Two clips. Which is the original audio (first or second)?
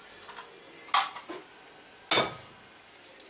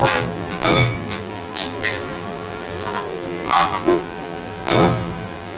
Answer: first